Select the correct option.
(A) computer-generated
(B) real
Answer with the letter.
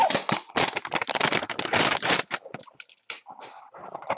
B